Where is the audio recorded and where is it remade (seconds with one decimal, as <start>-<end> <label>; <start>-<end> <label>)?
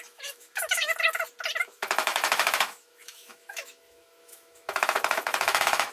0.0-0.9 remade; 0.9-1.6 recorded; 1.6-5.9 remade